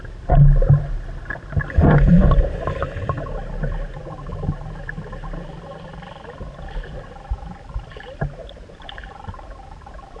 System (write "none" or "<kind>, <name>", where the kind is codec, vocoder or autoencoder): none